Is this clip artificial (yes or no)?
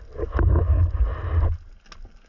no